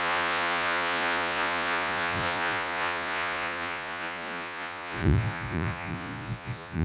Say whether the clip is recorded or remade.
remade